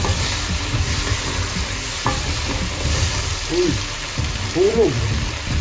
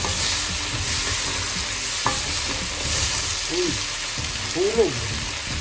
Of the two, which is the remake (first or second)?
first